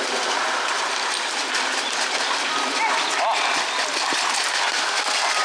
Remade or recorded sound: recorded